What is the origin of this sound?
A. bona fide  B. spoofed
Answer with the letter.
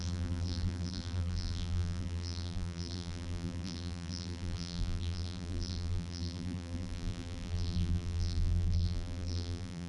B